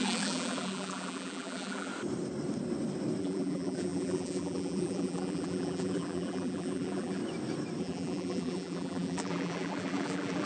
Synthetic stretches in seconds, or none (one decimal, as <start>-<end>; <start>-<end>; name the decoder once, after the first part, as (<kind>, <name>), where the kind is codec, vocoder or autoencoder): 0.0-1.9 (vocoder, BigVGAN v2); 3.2-7.2; 7.8-10.5